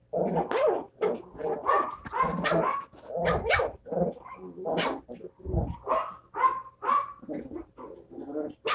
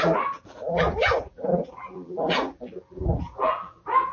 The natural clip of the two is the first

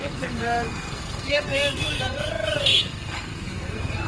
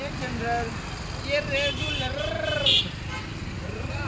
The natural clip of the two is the second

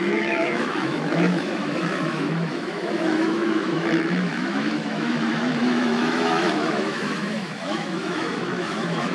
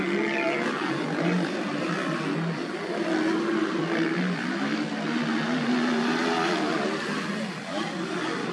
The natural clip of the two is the second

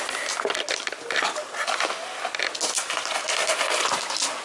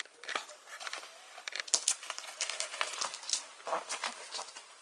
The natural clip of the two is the first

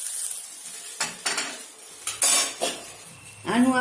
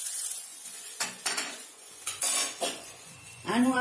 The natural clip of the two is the first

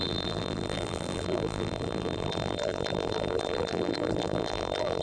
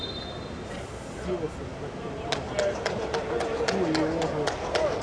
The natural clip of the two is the second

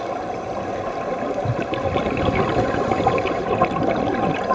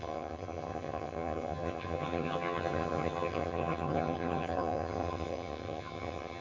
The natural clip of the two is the first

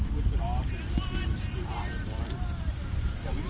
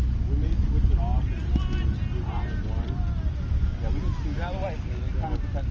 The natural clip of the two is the second